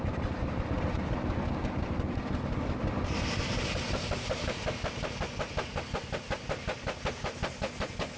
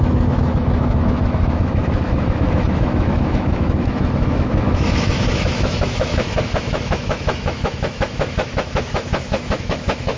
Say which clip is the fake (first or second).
second